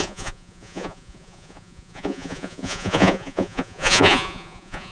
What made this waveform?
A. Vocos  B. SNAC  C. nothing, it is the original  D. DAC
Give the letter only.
A